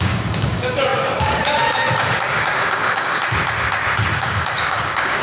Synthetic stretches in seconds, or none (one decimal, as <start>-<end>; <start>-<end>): 0.0-3.2; 4.0-5.2